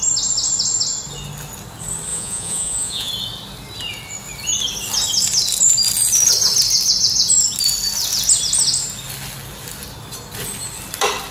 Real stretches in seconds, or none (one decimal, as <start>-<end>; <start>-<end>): 0.0-2.1; 3.1-11.3